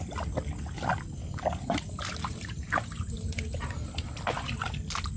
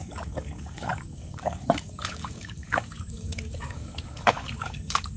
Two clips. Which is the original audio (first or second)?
first